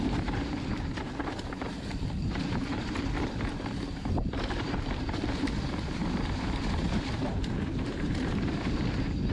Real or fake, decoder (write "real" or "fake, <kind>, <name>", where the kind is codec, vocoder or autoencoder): fake, vocoder, BigVGAN v2